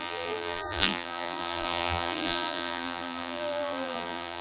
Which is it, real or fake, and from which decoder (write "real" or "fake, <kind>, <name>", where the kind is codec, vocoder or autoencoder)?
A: fake, vocoder, BigVGAN v2